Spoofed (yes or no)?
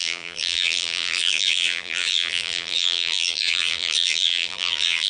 yes